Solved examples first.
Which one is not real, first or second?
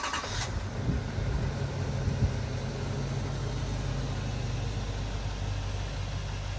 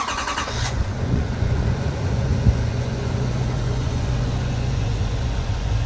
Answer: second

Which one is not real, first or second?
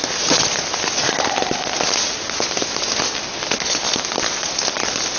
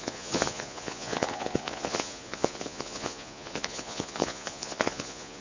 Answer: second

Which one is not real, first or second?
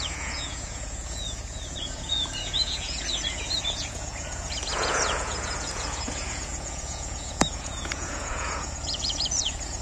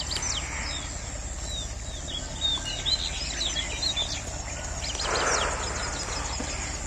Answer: first